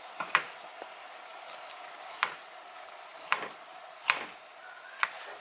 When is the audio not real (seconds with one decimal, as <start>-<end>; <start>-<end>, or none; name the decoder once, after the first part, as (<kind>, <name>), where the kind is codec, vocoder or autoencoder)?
none